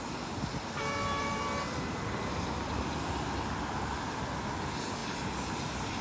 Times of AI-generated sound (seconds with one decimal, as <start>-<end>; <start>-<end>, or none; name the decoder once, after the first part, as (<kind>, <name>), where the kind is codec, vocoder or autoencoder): 1.2-2.2 (vocoder, BigVGAN v2)